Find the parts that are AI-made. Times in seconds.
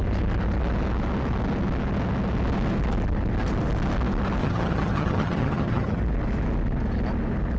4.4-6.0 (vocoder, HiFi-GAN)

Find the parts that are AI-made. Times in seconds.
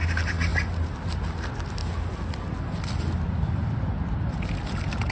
none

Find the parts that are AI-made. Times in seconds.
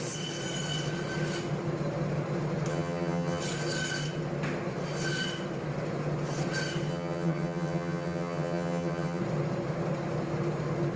2.7-3.4 (vocoder, HiFi-GAN); 6.9-9.2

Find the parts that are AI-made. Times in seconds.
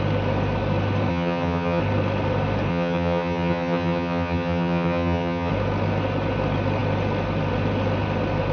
1.1-1.8 (vocoder, HiFi-GAN); 2.7-5.5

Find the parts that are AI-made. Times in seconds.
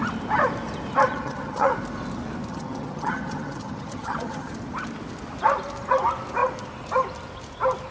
1.1-1.7 (vocoder, HiFi-GAN); 2.5-4.5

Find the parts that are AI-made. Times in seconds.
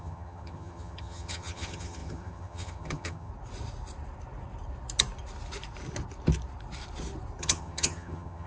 0.0-3.3 (vocoder, HiFi-GAN); 7.4-8.5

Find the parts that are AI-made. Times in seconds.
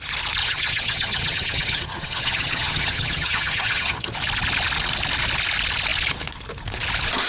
0.4-4.1 (vocoder, HiFi-GAN)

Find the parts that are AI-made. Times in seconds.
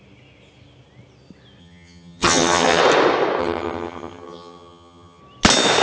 1.6-2.8 (vocoder, HiFi-GAN); 3.4-5.2